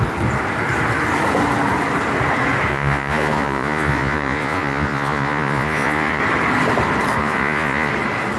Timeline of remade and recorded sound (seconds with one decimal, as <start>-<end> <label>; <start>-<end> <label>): 0.0-2.7 recorded; 2.7-6.2 remade; 6.2-7.2 recorded; 7.2-7.9 remade; 7.9-8.4 recorded